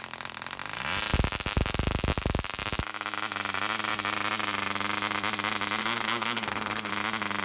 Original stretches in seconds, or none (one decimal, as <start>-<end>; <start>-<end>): 0.0-5.8; 6.9-7.4